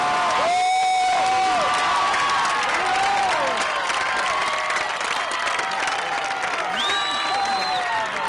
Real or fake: real